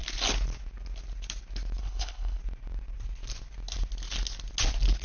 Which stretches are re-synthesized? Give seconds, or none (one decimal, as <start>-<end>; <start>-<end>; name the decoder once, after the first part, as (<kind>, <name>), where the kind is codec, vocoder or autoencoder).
1.8-2.4 (codec, HILCodec)